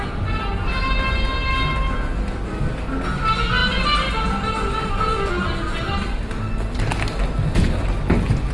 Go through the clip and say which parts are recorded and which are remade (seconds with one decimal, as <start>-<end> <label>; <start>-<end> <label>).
0.0-8.5 recorded